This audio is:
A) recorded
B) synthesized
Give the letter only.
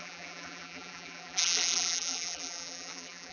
B